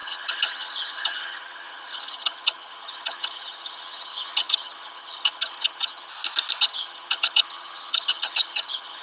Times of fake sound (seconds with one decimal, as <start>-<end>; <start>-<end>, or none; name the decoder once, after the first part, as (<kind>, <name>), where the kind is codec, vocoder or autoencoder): 0.0-6.1 (vocoder, HiFi-GAN); 6.6-9.0